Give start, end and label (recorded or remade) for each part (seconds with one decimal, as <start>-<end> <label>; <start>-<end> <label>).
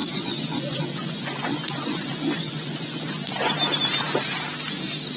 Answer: 0.0-3.1 remade; 3.1-5.2 recorded